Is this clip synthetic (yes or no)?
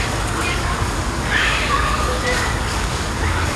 yes